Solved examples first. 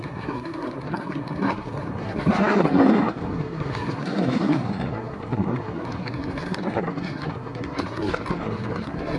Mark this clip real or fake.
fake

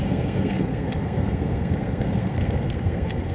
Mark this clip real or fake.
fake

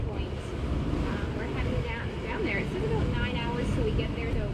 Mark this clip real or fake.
real